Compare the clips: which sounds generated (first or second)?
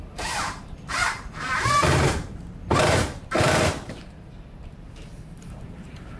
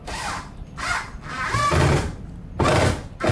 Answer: first